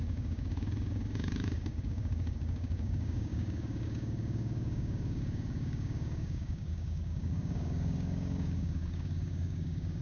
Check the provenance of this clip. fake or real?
fake